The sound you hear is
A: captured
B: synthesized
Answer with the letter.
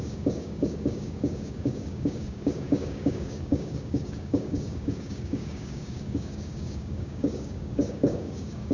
B